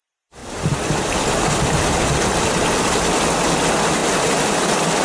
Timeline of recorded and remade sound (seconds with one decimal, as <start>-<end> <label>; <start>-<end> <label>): 0.0-5.0 recorded